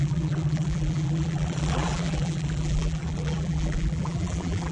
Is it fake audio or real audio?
fake